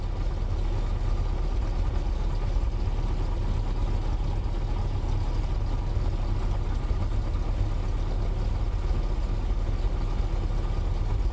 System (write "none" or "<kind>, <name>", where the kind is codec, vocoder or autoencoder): none